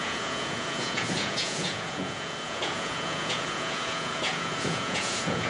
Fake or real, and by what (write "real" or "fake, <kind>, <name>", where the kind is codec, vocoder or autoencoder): fake, vocoder, Vocos